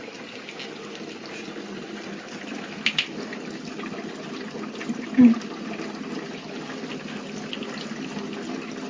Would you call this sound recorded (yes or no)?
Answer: yes